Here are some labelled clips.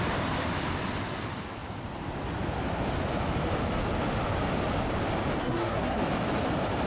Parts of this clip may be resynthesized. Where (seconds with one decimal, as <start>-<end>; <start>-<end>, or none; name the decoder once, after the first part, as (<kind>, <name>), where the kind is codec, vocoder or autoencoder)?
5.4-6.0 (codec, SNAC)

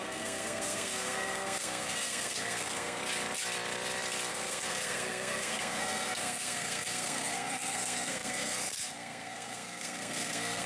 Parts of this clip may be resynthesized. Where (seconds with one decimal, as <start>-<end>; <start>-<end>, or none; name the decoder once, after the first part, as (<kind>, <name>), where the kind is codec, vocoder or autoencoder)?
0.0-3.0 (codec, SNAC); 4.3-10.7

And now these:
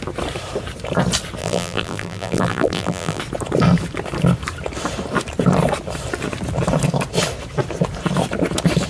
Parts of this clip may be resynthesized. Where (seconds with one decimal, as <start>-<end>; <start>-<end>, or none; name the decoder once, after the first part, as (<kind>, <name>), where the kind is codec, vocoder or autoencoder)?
1.4-3.2 (vocoder, BigVGAN v2)

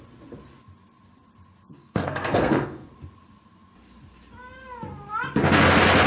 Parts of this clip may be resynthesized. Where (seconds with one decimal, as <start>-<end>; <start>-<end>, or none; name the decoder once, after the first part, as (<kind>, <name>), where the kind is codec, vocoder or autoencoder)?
1.7-2.9 (codec, SNAC)

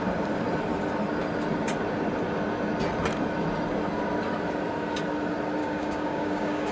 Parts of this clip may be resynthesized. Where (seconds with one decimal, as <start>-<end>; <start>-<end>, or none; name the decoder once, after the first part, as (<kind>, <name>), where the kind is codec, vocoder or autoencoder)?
5.6-6.7 (codec, DAC)